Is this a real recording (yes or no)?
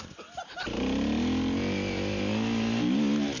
yes